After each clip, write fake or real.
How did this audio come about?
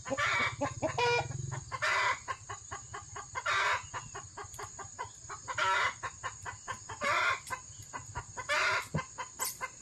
real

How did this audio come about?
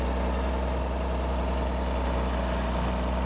real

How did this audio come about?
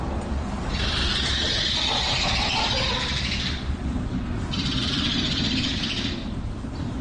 fake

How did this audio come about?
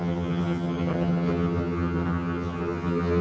fake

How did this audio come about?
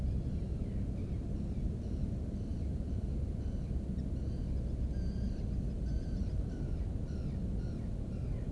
real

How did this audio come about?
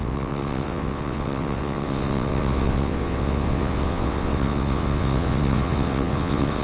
fake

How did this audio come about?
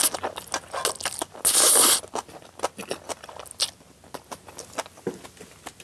real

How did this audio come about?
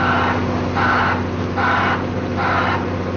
real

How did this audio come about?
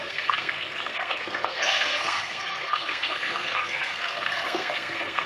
fake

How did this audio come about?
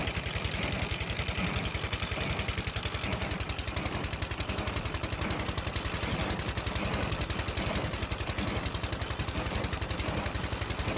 real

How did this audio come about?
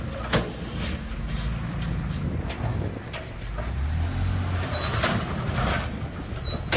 real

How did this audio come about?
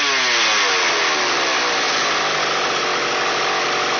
real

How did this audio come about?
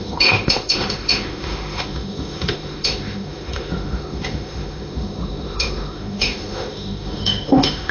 fake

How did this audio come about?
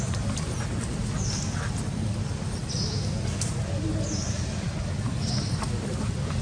real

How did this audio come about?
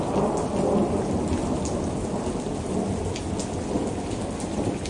real